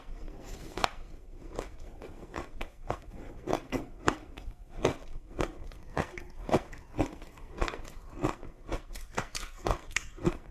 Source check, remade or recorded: remade